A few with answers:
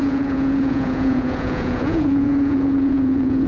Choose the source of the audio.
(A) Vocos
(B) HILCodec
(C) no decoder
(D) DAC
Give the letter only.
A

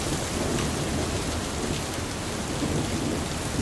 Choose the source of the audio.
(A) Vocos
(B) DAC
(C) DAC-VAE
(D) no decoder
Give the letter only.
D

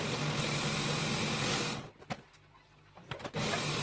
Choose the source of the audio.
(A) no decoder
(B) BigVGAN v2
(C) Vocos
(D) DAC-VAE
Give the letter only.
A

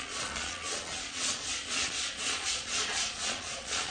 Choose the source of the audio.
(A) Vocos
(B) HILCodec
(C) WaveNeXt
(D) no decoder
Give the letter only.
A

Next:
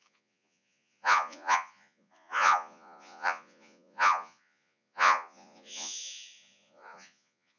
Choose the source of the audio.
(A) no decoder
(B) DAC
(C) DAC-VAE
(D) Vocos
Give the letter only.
D